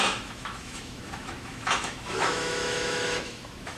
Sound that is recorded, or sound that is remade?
remade